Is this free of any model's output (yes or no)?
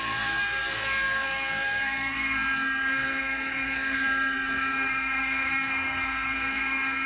no